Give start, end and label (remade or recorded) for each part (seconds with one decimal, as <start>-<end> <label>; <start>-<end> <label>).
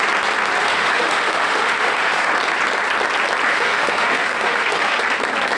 0.0-0.6 recorded; 0.6-2.3 remade; 2.3-3.5 recorded; 3.5-5.0 remade; 5.0-5.6 recorded